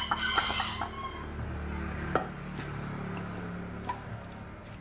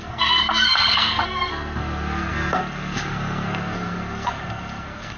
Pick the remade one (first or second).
second